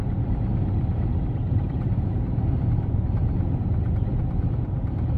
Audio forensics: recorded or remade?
recorded